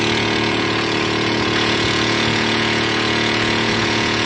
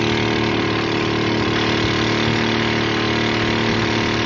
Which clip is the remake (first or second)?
first